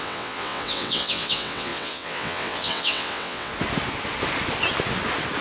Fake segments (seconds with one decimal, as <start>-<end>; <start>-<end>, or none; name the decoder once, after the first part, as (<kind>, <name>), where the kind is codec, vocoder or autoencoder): 0.0-3.5 (vocoder, WaveNeXt)